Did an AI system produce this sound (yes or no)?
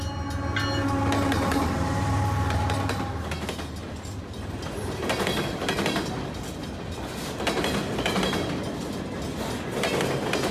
no